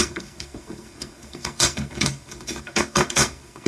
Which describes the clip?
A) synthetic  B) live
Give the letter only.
A